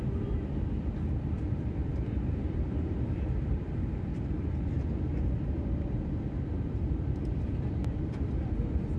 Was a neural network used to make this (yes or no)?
yes